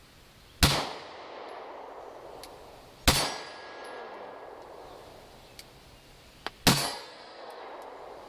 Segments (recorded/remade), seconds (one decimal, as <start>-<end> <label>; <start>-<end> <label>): 0.0-6.7 recorded; 6.7-7.6 remade; 7.6-8.3 recorded